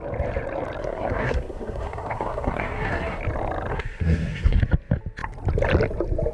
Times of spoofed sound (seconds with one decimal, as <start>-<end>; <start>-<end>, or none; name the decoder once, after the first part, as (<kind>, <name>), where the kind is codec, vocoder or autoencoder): 0.8-3.2 (codec, SNAC); 3.7-4.6